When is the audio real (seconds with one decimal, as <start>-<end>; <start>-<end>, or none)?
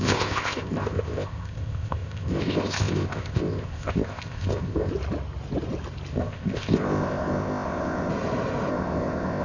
4.9-6.1; 8.1-8.7